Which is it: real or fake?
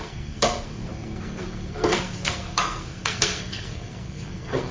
fake